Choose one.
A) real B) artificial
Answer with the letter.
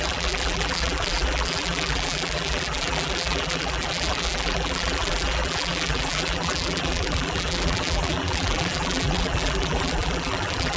B